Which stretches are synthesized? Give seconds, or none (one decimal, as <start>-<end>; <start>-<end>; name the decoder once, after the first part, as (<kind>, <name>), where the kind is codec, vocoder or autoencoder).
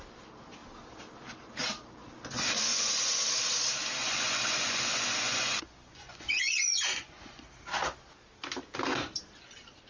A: 2.7-3.2 (vocoder, Vocos); 4.0-7.4